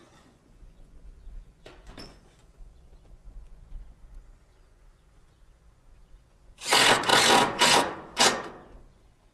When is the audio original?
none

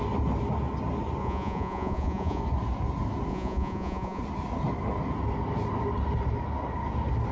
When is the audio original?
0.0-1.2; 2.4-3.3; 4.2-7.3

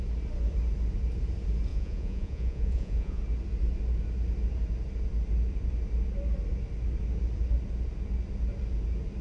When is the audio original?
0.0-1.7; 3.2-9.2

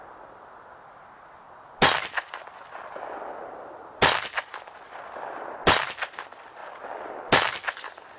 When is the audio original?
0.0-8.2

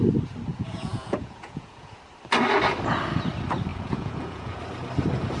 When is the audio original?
0.0-0.5; 2.0-3.7; 4.6-5.4